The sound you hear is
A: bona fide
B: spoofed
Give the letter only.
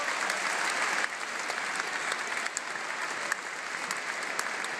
A